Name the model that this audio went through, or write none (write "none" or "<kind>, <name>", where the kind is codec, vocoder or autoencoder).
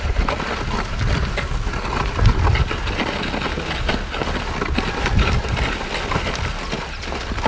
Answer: none